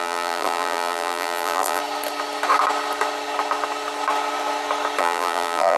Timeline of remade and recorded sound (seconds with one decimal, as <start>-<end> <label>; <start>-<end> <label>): 0.0-1.8 remade; 1.8-5.0 recorded; 5.0-5.8 remade